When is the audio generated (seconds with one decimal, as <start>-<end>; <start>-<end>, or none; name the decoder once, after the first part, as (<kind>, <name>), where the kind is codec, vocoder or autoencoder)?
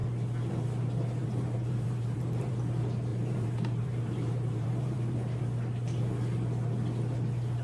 1.2-2.5 (vocoder, BigVGAN v2); 3.1-5.4